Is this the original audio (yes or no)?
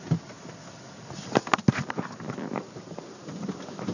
yes